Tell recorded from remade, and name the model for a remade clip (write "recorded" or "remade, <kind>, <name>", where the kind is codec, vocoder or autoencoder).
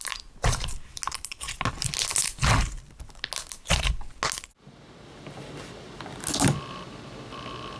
recorded